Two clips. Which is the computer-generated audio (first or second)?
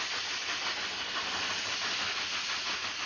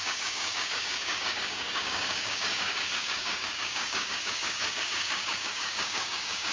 second